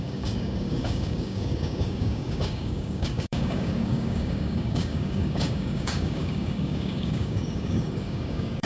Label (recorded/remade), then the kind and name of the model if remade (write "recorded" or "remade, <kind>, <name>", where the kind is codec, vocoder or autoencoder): remade, codec, DAC